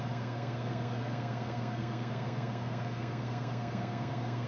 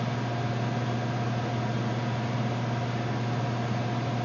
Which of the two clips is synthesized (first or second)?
first